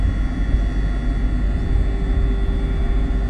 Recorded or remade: recorded